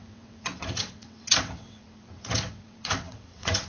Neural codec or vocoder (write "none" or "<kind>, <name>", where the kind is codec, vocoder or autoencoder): vocoder, WaveNeXt